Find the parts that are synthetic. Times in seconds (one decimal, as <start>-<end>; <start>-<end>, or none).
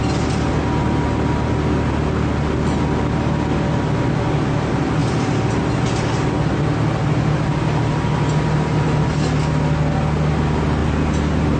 5.0-5.6; 10.8-11.6